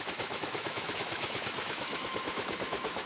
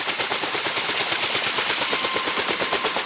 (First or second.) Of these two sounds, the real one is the second